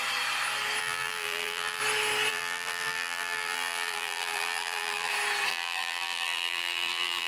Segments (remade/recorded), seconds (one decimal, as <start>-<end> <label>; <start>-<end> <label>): 0.0-0.8 recorded; 0.8-1.8 remade; 1.8-2.3 recorded; 2.3-5.1 remade; 5.1-5.5 recorded; 5.5-7.3 remade